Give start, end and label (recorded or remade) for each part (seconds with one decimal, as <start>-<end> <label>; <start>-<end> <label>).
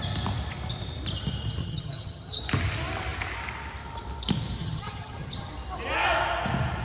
0.0-1.6 recorded; 1.6-2.4 remade; 2.4-4.6 recorded; 4.6-5.5 remade; 5.5-6.8 recorded